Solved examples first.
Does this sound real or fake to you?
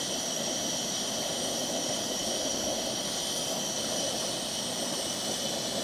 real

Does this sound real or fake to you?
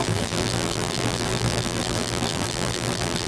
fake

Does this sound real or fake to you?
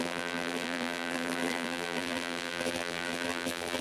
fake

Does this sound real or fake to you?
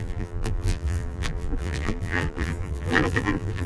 fake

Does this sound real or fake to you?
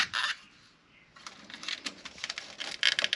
real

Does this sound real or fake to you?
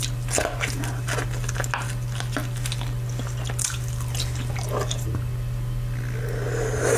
real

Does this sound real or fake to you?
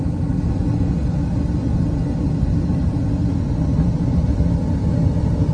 real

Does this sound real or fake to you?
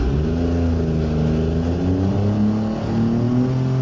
real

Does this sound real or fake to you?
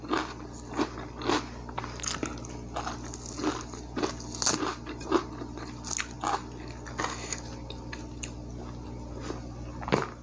real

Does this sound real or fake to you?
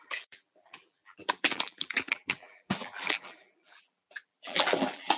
fake